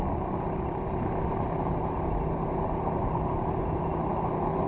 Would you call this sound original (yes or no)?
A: yes